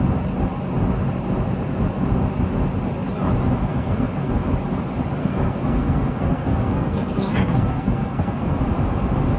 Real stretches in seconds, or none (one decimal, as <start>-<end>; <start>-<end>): 0.0-3.7; 4.3-5.2; 8.6-9.4